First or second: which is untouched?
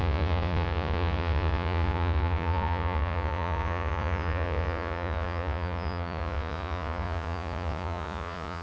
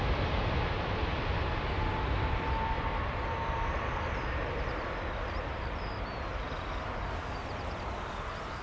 second